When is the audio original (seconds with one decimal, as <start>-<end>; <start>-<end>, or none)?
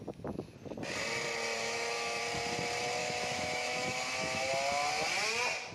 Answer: 0.0-1.6; 2.2-3.0; 4.5-5.7